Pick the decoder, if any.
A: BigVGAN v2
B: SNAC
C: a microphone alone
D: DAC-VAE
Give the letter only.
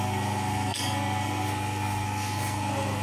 B